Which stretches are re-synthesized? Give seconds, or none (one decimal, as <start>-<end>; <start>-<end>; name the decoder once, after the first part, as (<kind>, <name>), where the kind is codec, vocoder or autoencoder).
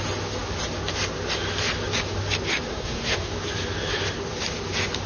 2.7-3.3 (codec, SNAC)